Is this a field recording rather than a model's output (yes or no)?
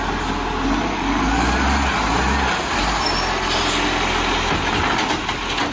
yes